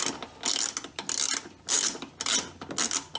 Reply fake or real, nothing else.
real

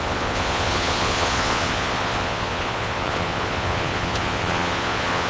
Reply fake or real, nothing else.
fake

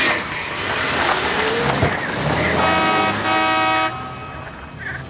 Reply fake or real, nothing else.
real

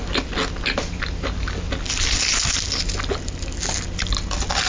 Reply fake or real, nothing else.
real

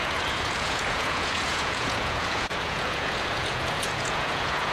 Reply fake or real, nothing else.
fake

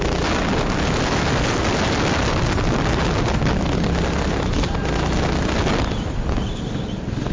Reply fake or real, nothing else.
real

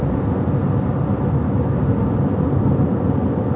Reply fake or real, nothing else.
real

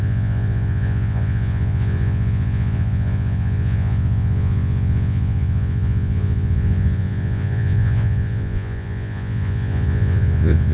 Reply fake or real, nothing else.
fake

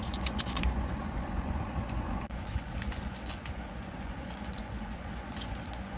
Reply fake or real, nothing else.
fake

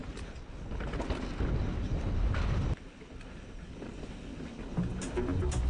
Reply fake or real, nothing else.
real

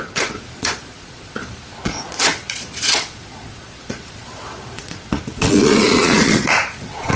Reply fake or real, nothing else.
fake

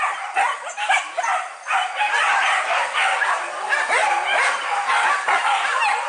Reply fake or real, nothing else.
real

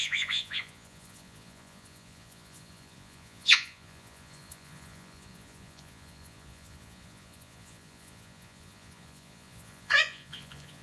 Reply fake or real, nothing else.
fake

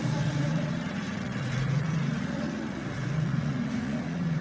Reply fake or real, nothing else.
fake